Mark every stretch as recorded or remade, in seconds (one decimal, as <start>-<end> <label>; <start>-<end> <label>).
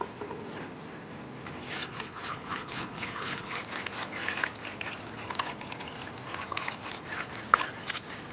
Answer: 0.0-1.9 recorded; 1.9-3.6 remade; 3.6-8.3 recorded